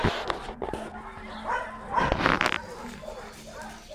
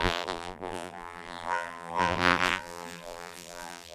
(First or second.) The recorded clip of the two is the first